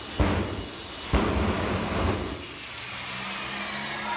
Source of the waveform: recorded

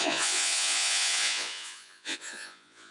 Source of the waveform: remade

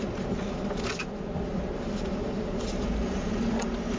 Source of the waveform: recorded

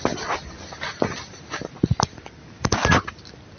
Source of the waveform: recorded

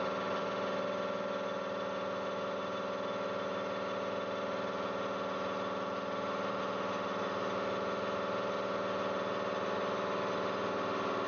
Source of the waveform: recorded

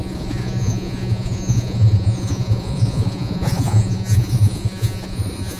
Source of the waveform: remade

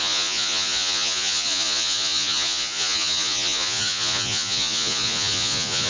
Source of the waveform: remade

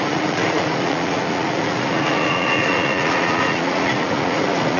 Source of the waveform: remade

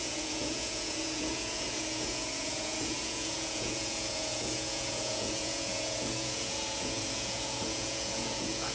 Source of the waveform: remade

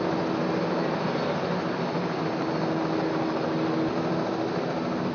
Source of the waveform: recorded